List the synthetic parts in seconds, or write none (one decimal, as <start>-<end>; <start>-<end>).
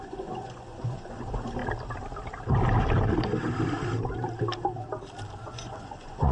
0.0-1.6; 5.4-6.3